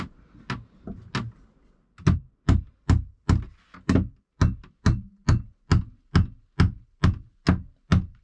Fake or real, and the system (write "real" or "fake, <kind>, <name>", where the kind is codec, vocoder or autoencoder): real